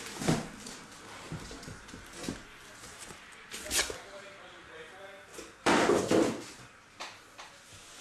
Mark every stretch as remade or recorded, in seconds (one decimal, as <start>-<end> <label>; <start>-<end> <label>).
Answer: 0.0-5.3 recorded; 5.3-6.0 remade; 6.0-8.0 recorded